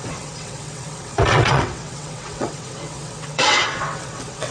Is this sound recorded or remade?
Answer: remade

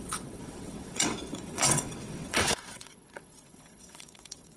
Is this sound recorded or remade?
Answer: remade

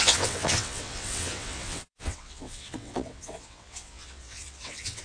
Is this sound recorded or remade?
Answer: remade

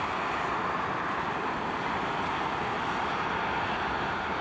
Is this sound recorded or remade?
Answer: recorded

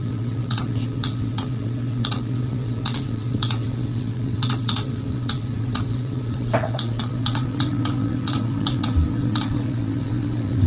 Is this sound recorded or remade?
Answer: remade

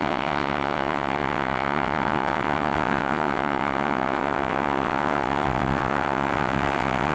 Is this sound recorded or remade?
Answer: remade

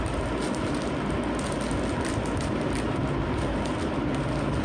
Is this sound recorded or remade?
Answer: recorded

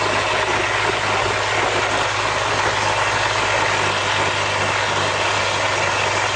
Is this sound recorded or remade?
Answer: recorded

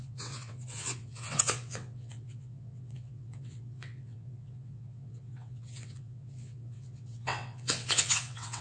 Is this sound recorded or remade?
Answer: remade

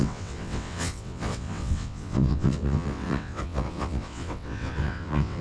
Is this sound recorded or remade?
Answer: remade